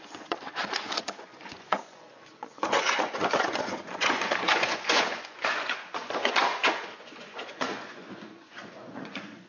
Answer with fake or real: fake